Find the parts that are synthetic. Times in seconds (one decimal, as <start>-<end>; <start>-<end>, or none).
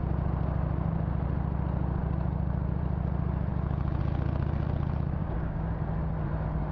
5.2-5.7